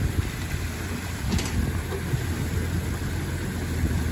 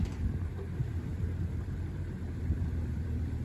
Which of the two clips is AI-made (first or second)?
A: second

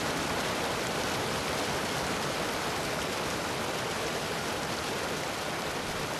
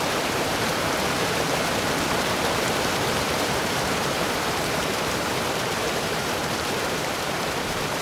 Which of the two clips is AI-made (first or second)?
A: second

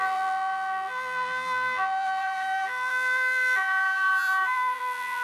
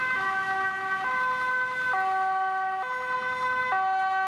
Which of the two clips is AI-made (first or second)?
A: first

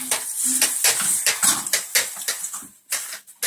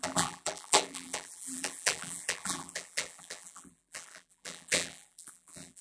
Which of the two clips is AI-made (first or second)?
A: second